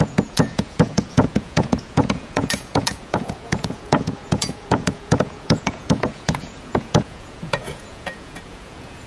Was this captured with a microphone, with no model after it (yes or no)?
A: no